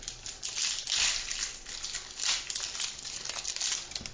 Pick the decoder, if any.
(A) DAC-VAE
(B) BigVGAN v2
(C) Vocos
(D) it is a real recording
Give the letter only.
D